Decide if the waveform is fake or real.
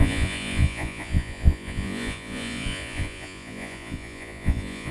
fake